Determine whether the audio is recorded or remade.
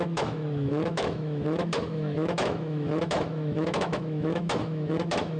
remade